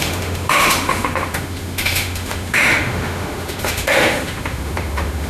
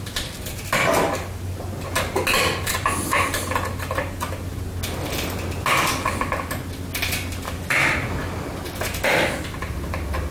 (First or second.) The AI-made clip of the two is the first